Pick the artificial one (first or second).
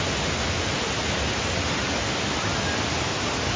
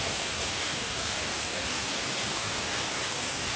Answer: second